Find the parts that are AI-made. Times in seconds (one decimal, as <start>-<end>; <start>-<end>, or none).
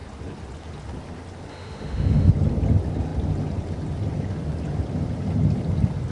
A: 1.5-2.3